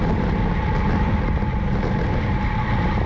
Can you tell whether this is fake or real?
real